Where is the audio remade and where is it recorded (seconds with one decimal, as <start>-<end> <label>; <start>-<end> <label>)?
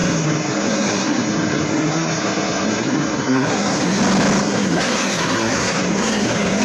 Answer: 0.0-4.0 remade; 4.0-4.4 recorded; 4.4-6.6 remade